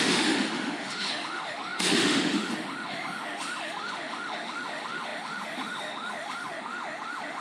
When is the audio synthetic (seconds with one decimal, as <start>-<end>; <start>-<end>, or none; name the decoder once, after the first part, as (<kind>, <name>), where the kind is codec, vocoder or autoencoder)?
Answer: 0.0-7.4 (autoencoder, DAC-VAE)